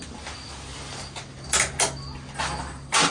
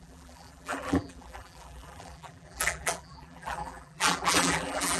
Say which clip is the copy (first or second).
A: second